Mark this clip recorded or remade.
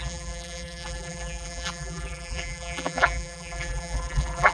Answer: remade